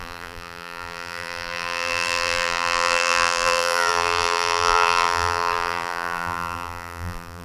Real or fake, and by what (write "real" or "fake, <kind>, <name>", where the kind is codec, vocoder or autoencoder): fake, vocoder, BigVGAN v2